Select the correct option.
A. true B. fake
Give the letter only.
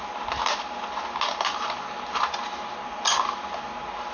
A